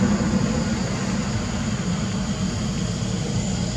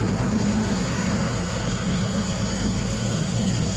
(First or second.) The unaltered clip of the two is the first